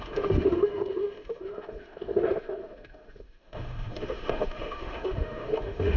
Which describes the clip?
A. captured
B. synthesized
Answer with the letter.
B